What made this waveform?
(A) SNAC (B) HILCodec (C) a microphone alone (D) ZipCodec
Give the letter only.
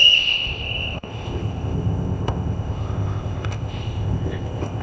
D